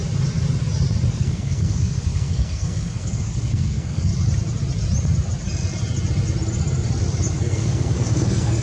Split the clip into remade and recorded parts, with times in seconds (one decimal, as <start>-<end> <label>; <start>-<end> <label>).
0.0-1.1 recorded; 1.1-4.1 remade; 4.1-7.3 recorded; 7.3-8.6 remade